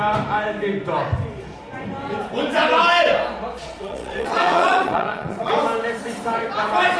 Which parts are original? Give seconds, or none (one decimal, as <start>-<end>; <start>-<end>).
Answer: 0.0-3.6; 5.5-7.0